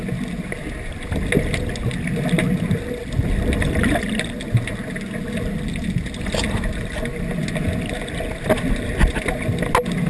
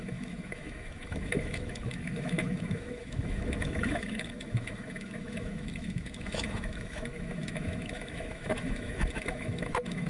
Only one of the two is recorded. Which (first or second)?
first